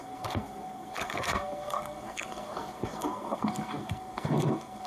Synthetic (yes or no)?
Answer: yes